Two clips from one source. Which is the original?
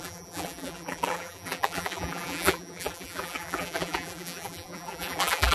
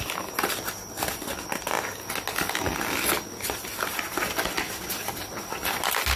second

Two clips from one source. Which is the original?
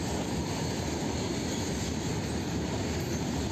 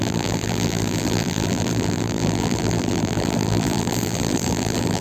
first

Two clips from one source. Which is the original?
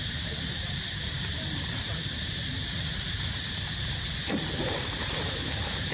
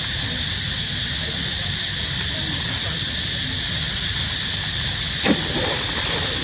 second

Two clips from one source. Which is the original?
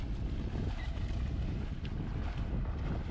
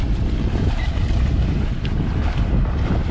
first